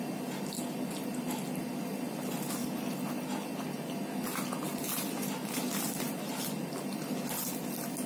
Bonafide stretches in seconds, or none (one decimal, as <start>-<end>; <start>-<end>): 0.0-8.1